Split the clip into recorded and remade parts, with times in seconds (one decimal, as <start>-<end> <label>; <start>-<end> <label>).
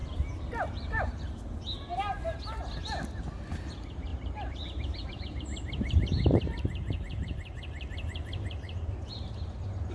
0.0-1.6 remade; 1.6-4.1 recorded; 4.1-8.9 remade; 8.9-9.9 recorded